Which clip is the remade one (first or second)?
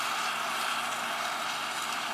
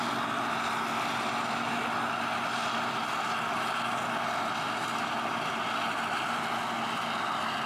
first